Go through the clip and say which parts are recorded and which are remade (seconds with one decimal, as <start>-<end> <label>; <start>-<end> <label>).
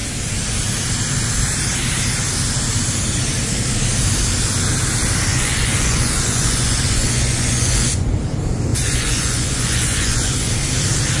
0.0-5.3 recorded; 5.3-8.2 remade; 8.2-8.7 recorded; 8.7-10.5 remade; 10.5-11.2 recorded